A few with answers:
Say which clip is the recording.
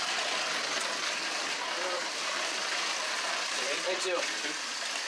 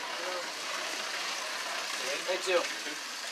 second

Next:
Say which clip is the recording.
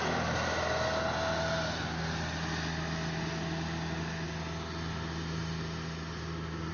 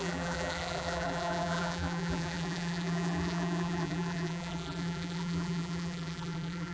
first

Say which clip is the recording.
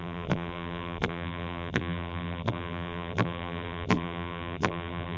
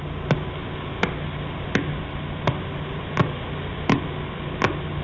second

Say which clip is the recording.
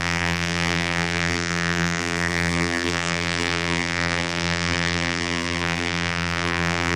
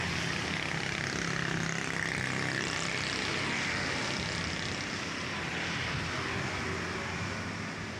second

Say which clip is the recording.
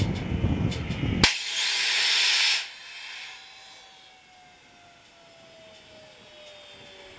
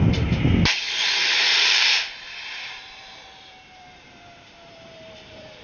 first